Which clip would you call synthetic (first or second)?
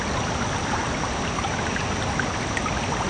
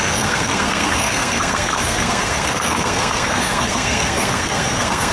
second